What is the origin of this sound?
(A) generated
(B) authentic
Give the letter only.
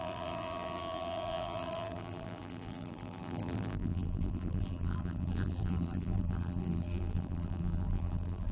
A